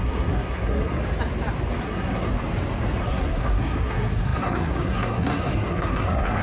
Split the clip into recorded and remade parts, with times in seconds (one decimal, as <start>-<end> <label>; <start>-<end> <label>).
0.0-1.0 remade; 1.0-1.8 recorded; 1.8-2.3 remade; 2.3-3.0 recorded; 3.0-6.4 remade